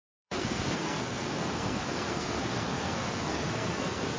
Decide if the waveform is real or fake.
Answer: fake